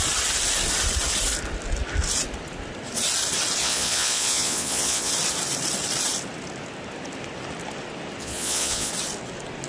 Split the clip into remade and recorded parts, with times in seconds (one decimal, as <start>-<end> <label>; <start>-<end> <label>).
0.0-3.6 recorded; 3.6-5.1 remade; 5.1-8.2 recorded; 8.2-8.9 remade; 8.9-9.7 recorded